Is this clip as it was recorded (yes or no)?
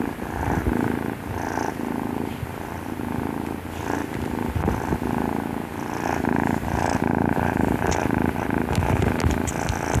yes